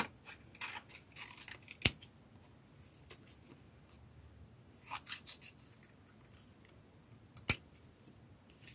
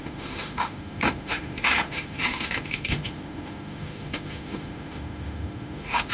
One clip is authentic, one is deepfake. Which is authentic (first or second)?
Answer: first